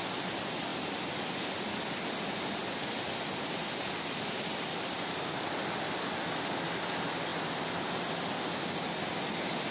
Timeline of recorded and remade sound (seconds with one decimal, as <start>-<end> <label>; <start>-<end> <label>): 0.0-9.7 recorded